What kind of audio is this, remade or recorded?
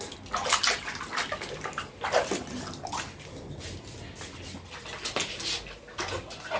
recorded